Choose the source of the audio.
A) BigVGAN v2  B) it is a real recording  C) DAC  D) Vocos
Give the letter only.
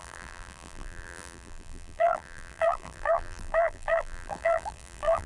A